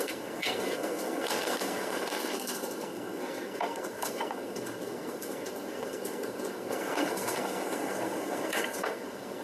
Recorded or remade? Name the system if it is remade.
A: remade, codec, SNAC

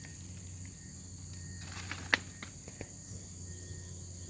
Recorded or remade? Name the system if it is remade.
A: recorded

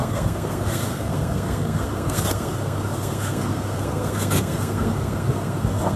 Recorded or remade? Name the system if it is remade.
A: remade, codec, SNAC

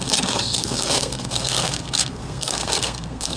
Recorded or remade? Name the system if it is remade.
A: remade, codec, SNAC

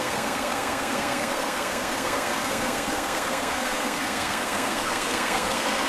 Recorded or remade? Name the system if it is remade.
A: remade, codec, SNAC